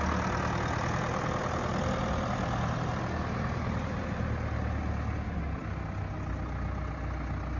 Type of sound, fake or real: real